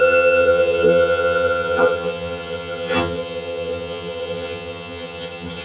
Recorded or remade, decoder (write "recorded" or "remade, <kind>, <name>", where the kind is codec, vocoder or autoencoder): remade, vocoder, HiFi-GAN